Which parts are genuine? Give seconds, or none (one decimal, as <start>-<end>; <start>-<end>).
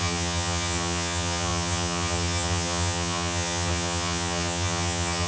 none